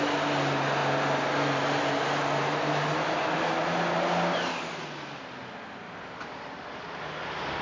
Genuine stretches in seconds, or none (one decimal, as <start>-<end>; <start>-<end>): 0.0-7.6